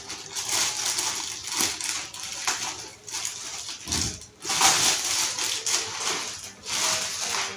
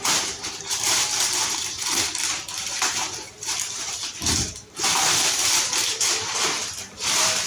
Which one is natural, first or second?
first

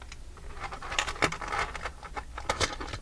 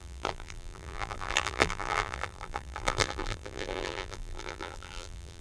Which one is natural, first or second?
first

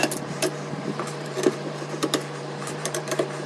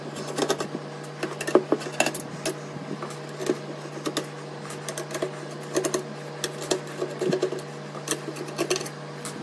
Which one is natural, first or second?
second